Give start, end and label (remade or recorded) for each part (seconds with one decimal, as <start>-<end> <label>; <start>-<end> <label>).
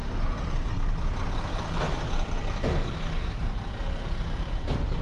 0.0-5.0 recorded